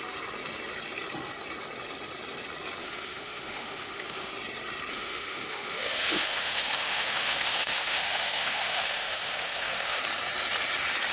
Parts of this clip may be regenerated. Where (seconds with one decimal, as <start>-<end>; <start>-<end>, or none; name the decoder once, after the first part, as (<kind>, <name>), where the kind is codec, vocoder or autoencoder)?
2.8-4.3 (autoencoder, DAC-VAE); 4.9-10.0